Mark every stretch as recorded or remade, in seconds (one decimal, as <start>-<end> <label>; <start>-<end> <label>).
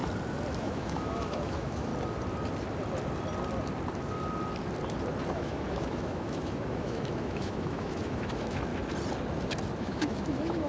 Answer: 0.0-0.5 recorded; 0.5-1.9 remade; 1.9-5.3 recorded; 5.3-8.7 remade; 8.7-9.8 recorded; 9.8-10.7 remade